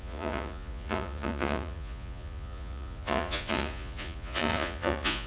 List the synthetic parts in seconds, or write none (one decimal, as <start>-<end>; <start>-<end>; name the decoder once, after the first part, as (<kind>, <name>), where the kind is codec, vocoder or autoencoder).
0.0-5.3 (vocoder, Vocos)